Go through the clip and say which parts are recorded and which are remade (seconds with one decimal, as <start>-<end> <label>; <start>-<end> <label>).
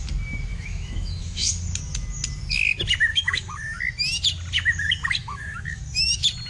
0.0-0.5 recorded; 0.5-1.5 remade; 1.5-3.1 recorded; 3.1-3.8 remade; 3.8-5.2 recorded; 5.2-5.8 remade; 5.8-6.5 recorded